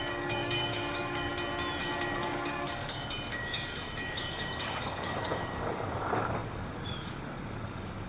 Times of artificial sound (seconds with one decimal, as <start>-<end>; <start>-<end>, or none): 0.0-1.3; 1.8-8.1